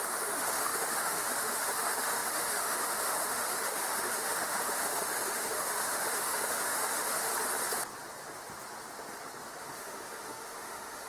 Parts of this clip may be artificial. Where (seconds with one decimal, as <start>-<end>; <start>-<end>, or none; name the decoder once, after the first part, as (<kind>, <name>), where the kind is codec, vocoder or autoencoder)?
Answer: 0.0-7.3 (autoencoder, DAC-VAE); 9.6-11.1